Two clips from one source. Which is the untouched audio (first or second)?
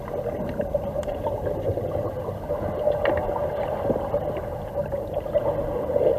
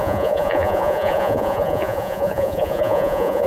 first